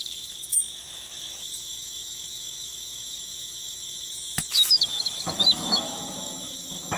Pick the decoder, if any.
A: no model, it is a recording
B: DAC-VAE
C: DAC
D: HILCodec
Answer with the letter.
B